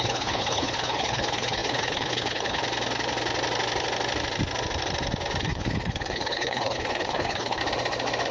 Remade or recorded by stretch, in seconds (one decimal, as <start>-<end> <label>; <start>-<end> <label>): 0.0-2.6 remade; 2.6-5.4 recorded; 5.4-7.6 remade; 7.6-8.3 recorded

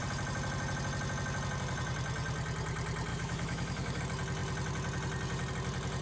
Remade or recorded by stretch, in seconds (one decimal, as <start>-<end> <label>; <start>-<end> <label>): 0.0-3.1 recorded; 3.1-4.0 remade; 4.0-6.0 recorded

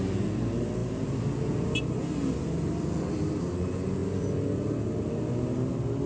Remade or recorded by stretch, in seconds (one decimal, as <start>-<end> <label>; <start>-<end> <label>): 0.0-6.1 recorded

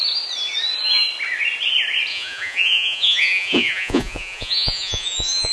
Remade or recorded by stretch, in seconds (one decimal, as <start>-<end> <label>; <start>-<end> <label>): 0.0-2.1 recorded; 2.1-5.5 remade

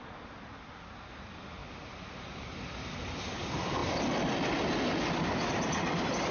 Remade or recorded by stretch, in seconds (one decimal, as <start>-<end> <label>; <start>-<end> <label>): 0.0-6.3 recorded